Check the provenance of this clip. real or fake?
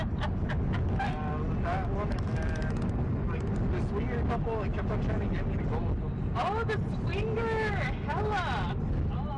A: real